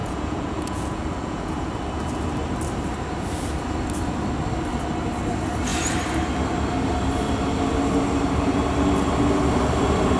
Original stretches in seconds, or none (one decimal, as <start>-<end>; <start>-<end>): 1.7-10.2